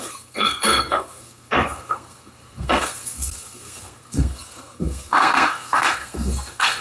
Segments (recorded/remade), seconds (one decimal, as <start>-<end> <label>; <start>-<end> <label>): 0.0-6.8 remade